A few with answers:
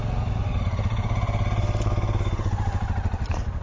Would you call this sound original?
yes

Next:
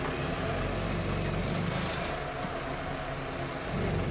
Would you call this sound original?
yes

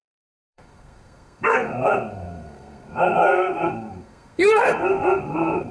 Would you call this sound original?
no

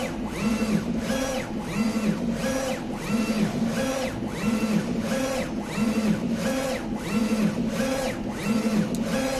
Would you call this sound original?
yes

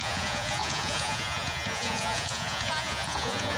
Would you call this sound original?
no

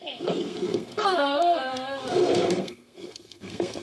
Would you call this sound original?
no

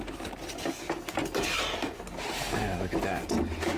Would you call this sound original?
yes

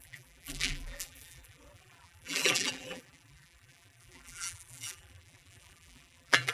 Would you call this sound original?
no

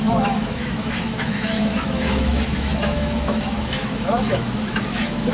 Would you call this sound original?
no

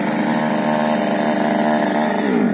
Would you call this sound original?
yes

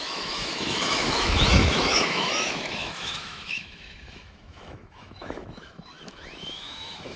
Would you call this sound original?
no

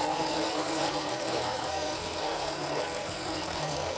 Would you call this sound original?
no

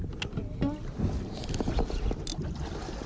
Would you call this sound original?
yes